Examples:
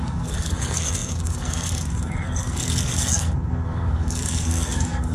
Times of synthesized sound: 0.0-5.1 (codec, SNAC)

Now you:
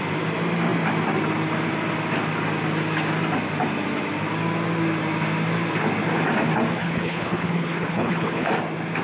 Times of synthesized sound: 6.8-8.5 (codec, HILCodec)

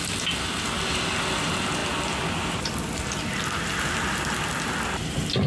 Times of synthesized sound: none

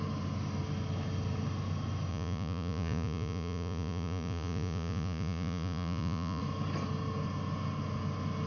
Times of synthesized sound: 2.1-6.4 (vocoder, Vocos)

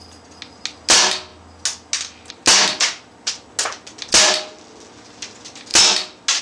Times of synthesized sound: none

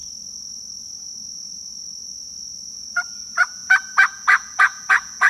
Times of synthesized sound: 2.7-5.3 (vocoder, Vocos)

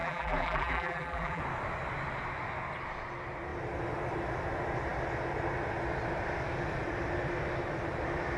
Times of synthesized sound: 0.0-1.4 (vocoder, BigVGAN v2)

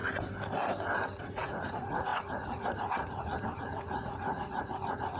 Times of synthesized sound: 1.3-5.2 (vocoder, Vocos)